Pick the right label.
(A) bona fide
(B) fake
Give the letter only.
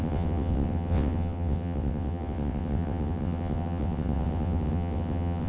B